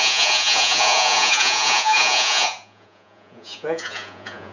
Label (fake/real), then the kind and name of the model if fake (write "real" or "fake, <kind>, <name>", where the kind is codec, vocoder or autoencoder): fake, vocoder, Vocos